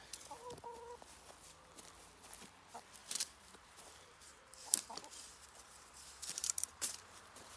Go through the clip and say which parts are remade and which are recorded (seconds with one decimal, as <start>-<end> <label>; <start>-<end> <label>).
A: 0.0-3.0 recorded; 3.0-7.6 remade